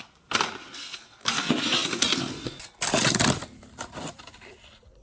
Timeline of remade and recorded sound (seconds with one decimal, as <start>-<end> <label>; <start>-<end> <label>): 0.0-5.0 recorded